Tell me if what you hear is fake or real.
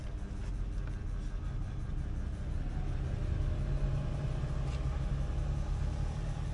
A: real